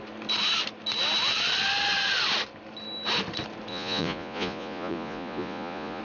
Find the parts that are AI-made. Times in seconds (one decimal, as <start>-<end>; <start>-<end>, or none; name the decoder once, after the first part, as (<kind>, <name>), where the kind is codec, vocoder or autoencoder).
3.7-6.0 (vocoder, Vocos)

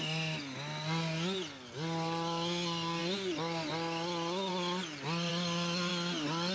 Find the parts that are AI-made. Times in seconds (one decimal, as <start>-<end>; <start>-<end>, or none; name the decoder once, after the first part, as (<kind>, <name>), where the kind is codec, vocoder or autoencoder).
none

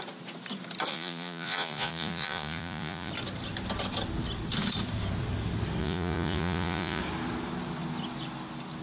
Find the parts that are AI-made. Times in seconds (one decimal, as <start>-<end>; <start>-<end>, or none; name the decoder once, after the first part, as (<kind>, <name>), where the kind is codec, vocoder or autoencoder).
0.9-3.1 (vocoder, Vocos); 5.8-7.0

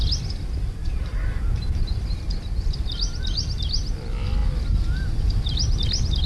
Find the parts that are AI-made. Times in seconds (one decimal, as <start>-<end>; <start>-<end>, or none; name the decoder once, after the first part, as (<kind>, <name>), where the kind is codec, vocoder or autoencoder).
none

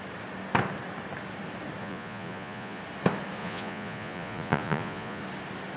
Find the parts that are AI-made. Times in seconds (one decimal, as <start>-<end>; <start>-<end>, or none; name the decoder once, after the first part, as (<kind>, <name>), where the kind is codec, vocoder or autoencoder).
1.8-2.8 (vocoder, Vocos); 3.4-5.2

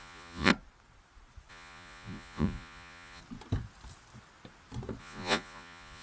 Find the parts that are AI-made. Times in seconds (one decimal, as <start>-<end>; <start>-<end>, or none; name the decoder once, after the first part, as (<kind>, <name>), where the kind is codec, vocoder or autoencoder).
0.0-0.5 (vocoder, Vocos); 1.5-3.2; 5.0-6.0

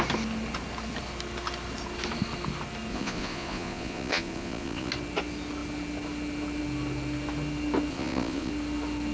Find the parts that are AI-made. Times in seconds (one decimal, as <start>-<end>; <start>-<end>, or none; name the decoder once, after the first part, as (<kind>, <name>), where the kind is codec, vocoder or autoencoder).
2.9-4.9 (vocoder, Vocos); 7.9-8.5

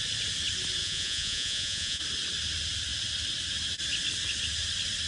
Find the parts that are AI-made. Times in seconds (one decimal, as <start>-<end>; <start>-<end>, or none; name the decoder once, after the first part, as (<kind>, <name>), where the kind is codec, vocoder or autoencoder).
0.8-2.0 (vocoder, Vocos)